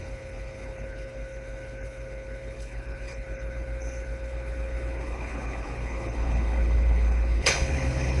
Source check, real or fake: fake